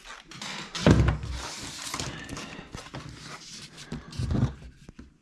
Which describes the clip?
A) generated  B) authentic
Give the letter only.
B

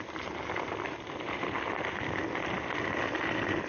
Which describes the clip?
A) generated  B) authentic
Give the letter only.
B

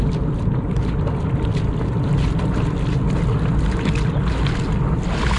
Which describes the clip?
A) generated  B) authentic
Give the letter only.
B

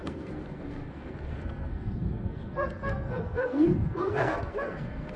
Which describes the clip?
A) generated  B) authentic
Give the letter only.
A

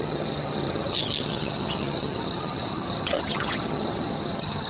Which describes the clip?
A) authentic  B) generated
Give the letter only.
B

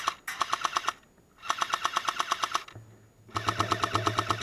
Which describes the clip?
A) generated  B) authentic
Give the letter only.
B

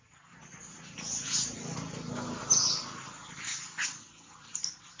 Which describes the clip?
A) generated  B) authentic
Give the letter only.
B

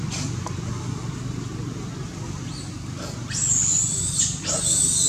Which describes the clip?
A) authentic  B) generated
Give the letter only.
A